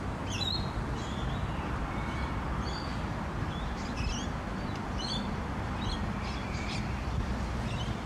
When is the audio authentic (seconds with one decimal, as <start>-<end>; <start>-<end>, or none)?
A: 2.9-3.8